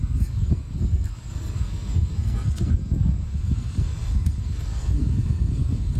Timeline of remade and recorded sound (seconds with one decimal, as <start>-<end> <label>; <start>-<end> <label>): 0.0-6.0 remade